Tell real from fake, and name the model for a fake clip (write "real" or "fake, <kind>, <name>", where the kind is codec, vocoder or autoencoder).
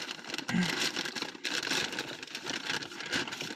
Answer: fake, vocoder, BigVGAN v2